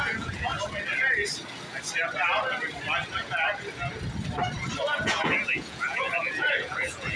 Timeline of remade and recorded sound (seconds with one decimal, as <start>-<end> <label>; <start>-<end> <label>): 0.0-0.5 remade; 0.5-4.8 recorded; 4.8-7.2 remade